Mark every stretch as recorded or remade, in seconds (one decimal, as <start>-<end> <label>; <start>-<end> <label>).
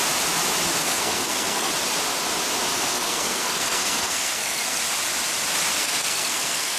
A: 0.0-0.8 recorded; 0.8-1.7 remade; 1.7-2.7 recorded; 2.7-4.8 remade; 4.8-5.7 recorded; 5.7-6.8 remade